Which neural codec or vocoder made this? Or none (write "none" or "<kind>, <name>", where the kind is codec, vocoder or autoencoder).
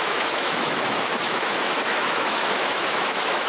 autoencoder, DAC-VAE